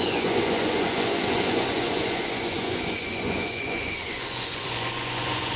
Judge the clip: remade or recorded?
remade